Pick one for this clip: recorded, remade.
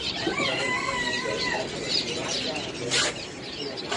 recorded